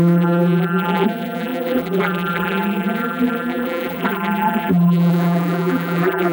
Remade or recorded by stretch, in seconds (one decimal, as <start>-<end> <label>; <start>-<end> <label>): 0.0-6.3 remade